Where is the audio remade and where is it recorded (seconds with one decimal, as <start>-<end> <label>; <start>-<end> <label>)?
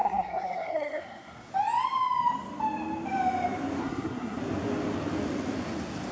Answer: 0.0-1.5 remade; 1.5-3.8 recorded; 3.8-4.4 remade; 4.4-6.1 recorded